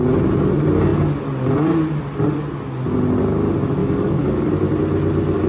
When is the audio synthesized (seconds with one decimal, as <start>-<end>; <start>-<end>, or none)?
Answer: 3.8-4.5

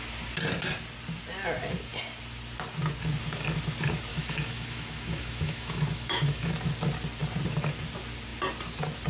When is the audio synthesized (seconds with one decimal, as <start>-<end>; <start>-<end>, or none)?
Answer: 4.1-6.5

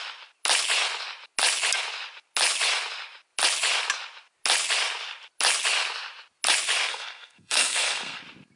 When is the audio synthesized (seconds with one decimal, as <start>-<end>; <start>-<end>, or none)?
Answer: 6.9-8.2

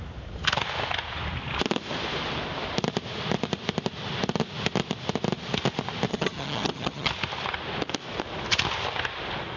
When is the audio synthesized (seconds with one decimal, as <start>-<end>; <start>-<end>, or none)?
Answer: 6.1-7.1

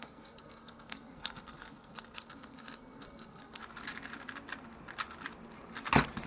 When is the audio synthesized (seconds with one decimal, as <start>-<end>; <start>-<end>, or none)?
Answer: 0.0-3.6

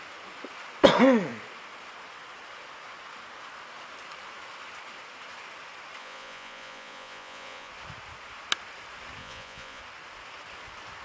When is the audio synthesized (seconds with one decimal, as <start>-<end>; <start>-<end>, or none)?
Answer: 6.0-7.7; 9.2-9.8

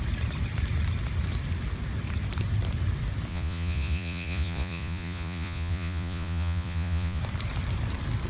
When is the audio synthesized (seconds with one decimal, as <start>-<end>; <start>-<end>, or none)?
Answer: 3.3-7.2

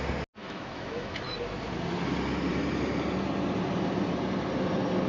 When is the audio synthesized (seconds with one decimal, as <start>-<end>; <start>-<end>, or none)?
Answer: 0.4-1.2